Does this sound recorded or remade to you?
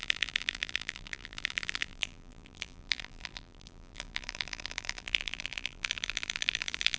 remade